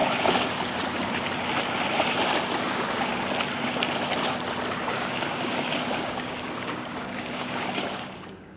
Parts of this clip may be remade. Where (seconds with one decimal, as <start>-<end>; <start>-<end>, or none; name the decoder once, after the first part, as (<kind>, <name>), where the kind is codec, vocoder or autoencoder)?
2.6-3.1 (codec, DAC); 4.8-8.6